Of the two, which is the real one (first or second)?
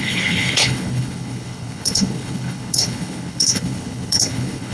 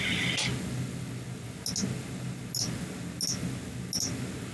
second